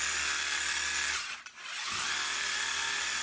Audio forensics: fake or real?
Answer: real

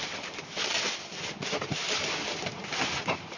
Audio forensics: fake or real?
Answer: real